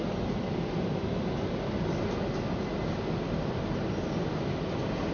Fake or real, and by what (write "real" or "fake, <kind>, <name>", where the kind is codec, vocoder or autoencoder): real